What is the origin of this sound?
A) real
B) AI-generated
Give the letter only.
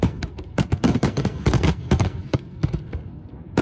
B